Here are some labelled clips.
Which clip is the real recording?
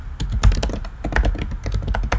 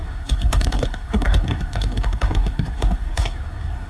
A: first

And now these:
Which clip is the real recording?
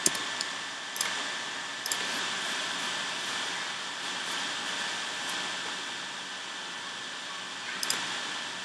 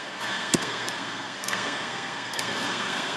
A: first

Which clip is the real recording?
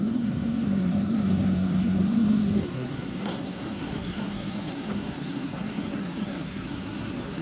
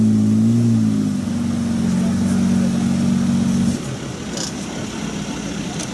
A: second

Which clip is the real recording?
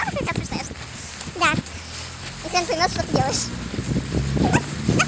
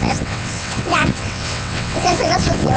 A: first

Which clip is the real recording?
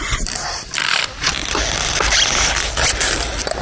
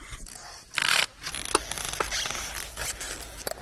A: second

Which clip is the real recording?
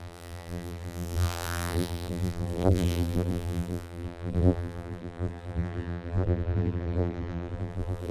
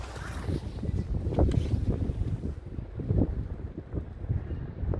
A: second